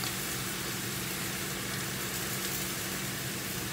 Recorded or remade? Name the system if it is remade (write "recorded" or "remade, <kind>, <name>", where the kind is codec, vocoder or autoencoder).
remade, vocoder, BigVGAN v2